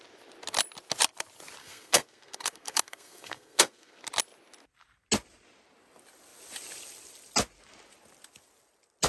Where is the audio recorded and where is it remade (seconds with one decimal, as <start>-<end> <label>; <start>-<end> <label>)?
0.0-1.6 recorded; 1.6-4.0 remade; 4.0-9.1 recorded